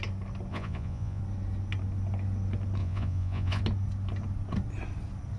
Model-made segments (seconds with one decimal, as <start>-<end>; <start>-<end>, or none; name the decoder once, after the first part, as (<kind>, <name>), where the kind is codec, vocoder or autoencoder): 0.5-1.2 (vocoder, Vocos); 2.8-3.6